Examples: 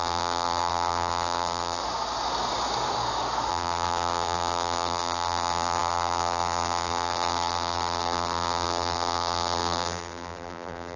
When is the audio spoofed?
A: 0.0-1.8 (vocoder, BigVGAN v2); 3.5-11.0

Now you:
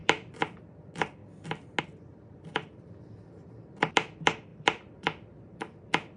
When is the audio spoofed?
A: 0.0-1.2 (vocoder, BigVGAN v2); 1.8-6.2

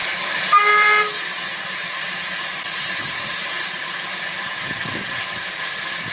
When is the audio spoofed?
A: 2.9-3.8 (vocoder, BigVGAN v2)

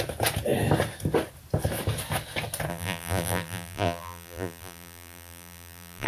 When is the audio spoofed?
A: 2.7-6.1 (vocoder, BigVGAN v2)

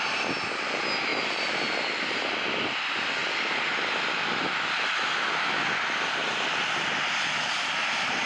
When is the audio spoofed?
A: none

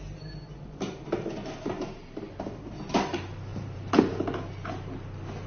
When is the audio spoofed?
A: 3.5-4.0 (vocoder, BigVGAN v2)

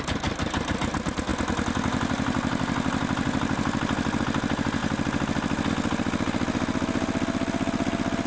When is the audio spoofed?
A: none